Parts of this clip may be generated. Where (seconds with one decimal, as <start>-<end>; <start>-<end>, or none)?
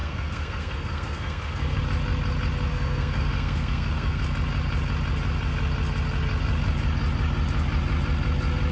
0.0-1.8; 2.7-4.2